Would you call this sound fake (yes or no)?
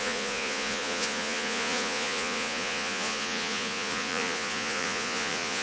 yes